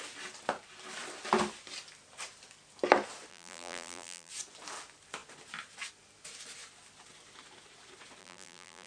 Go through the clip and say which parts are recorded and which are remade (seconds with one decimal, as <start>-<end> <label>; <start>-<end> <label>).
0.0-3.3 recorded; 3.3-4.3 remade; 4.3-8.2 recorded; 8.2-8.9 remade